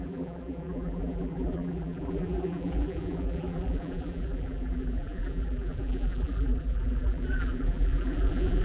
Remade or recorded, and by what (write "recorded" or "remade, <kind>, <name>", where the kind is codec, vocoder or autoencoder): remade, vocoder, BigVGAN v2